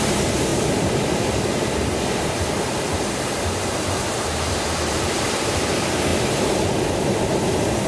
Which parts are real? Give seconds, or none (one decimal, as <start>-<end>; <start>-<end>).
6.1-7.4